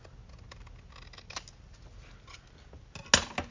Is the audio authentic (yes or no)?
yes